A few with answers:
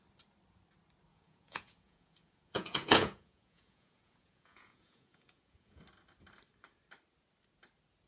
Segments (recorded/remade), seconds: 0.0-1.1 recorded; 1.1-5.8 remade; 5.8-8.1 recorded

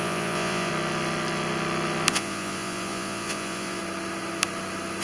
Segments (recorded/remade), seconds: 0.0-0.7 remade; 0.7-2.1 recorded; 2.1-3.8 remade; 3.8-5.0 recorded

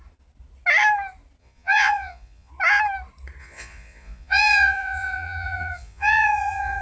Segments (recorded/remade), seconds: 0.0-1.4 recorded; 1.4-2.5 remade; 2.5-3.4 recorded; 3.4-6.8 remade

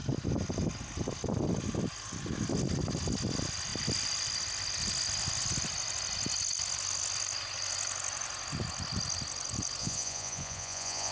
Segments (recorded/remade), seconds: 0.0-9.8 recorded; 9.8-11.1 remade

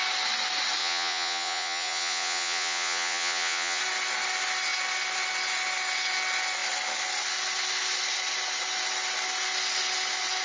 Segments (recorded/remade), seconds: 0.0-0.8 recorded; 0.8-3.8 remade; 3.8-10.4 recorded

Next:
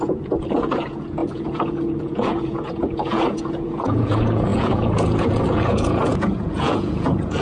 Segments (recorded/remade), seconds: 0.0-7.4 remade

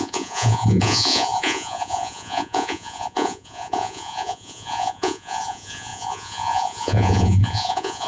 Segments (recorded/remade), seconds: 0.0-8.1 remade

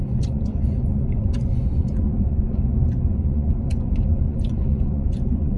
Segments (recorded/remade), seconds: 0.0-2.6 remade; 2.6-3.1 recorded; 3.1-5.6 remade